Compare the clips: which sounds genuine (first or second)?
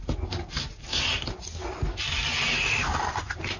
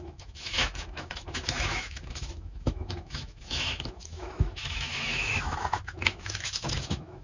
first